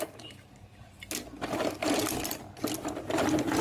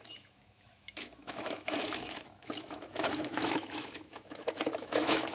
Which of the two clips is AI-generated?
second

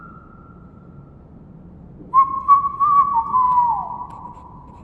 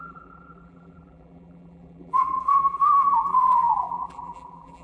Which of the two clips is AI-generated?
second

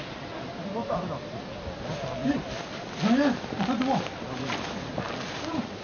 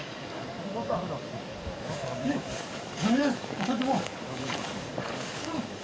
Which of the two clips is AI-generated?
second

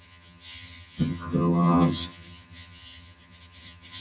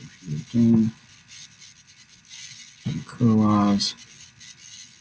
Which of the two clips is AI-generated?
first